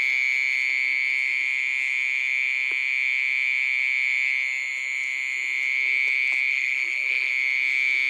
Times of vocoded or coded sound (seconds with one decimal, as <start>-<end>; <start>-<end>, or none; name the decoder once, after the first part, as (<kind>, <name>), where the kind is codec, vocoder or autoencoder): 6.5-7.3 (codec, SNAC)